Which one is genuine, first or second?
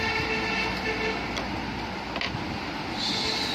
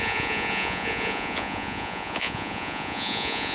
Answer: first